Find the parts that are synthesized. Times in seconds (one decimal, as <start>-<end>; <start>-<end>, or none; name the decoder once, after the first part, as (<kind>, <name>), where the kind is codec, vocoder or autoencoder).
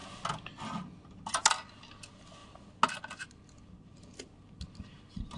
none